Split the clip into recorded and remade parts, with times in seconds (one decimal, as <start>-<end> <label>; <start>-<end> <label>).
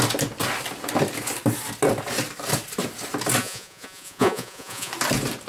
0.0-3.4 recorded; 3.4-4.9 remade; 4.9-5.5 recorded